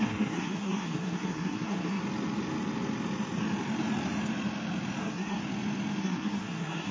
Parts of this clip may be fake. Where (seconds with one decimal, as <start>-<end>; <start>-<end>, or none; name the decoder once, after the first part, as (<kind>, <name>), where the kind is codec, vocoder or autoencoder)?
0.0-2.0 (codec, SNAC); 5.0-5.4; 6.0-6.9